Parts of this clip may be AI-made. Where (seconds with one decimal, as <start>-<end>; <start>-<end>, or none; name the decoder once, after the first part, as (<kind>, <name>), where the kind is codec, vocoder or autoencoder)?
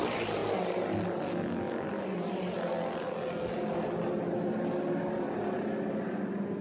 none